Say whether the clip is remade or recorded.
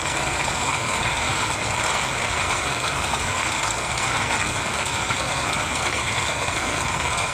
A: remade